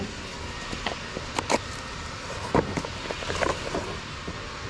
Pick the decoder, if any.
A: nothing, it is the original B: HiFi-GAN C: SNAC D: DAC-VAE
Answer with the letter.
A